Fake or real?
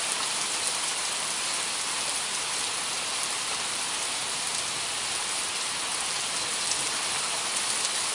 real